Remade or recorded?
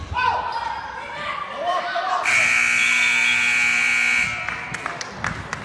recorded